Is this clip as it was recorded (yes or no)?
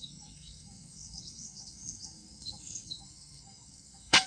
no